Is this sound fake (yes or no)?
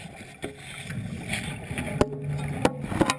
no